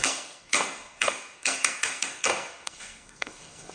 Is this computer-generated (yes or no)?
yes